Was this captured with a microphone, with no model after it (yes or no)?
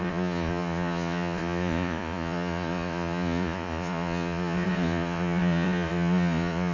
no